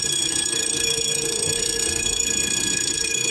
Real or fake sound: fake